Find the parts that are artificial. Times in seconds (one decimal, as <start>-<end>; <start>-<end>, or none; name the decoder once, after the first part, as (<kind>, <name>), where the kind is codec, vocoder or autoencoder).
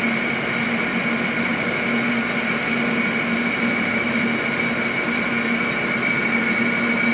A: none